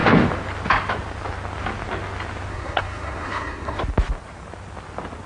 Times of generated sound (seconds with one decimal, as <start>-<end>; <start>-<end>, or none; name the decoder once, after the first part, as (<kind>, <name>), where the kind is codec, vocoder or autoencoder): 2.5-3.8 (codec, SNAC)